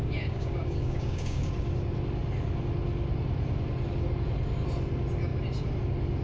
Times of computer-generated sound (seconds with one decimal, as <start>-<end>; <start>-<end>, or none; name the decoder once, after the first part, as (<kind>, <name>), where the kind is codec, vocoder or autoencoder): 0.0-1.5 (codec, DAC)